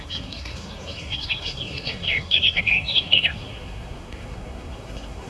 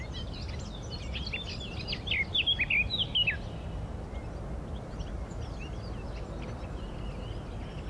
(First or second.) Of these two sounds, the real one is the second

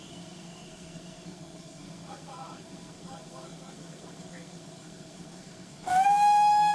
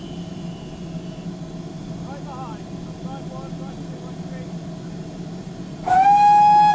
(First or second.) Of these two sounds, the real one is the second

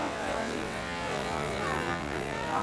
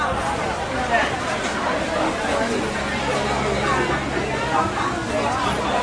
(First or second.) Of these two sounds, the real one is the second